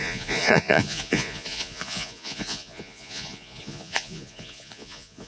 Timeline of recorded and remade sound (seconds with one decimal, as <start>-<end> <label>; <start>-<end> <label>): 0.0-5.3 remade